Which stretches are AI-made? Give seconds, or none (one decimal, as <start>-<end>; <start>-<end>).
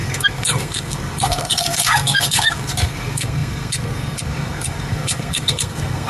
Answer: 0.0-6.1